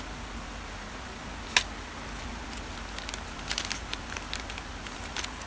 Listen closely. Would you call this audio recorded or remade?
recorded